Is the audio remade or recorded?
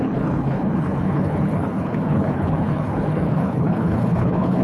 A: remade